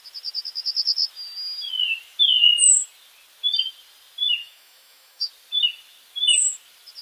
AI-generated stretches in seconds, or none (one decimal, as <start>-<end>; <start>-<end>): 4.4-5.3